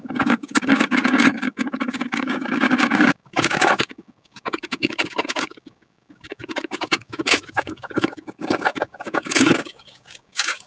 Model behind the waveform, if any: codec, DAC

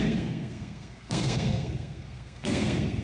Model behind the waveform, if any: codec, SNAC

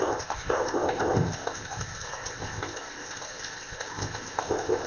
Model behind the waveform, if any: codec, ZipCodec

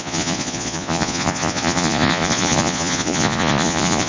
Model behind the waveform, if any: vocoder, Vocos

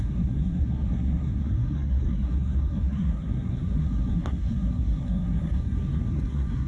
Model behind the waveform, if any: codec, SNAC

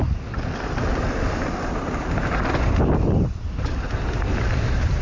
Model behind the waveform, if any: none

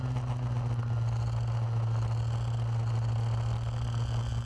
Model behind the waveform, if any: none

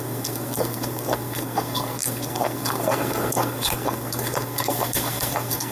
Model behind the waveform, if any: codec, SNAC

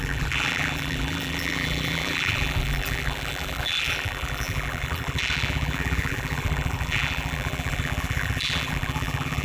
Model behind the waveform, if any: vocoder, BigVGAN v2